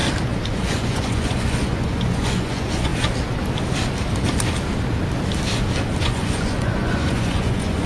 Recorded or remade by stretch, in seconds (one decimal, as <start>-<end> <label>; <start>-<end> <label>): 0.0-0.5 recorded; 0.5-2.9 remade; 2.9-6.0 recorded; 6.0-7.9 remade